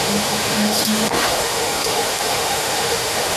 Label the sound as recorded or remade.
remade